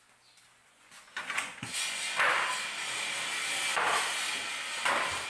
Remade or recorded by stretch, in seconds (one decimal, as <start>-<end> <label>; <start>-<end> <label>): 0.0-0.6 recorded; 0.6-2.3 remade; 2.3-5.3 recorded